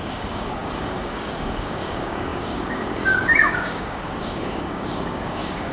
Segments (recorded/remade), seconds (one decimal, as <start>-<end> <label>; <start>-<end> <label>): 0.0-5.7 remade